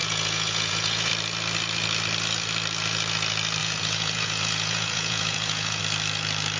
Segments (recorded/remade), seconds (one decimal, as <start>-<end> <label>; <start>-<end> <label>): 0.0-1.1 remade; 1.1-3.6 recorded; 3.6-5.8 remade; 5.8-6.6 recorded